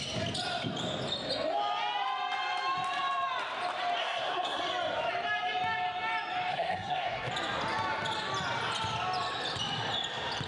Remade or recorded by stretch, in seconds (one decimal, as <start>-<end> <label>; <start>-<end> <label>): 0.0-4.0 recorded; 4.0-4.6 remade; 4.6-6.5 recorded; 6.5-7.3 remade; 7.3-10.5 recorded